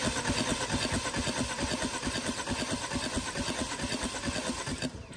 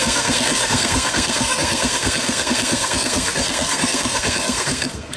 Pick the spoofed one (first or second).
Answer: second